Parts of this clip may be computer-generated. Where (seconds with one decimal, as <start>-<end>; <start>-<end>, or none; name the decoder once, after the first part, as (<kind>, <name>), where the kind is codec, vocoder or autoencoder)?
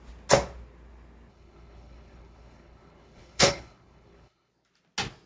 1.3-4.5 (codec, HILCodec)